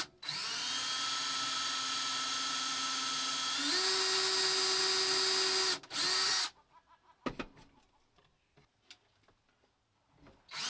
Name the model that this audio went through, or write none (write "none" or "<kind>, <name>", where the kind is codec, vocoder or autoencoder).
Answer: none